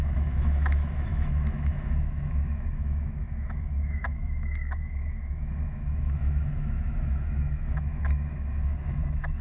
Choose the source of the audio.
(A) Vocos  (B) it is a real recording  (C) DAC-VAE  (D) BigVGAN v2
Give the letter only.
C